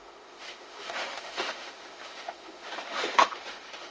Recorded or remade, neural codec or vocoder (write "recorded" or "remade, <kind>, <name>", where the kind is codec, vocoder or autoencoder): remade, autoencoder, DAC-VAE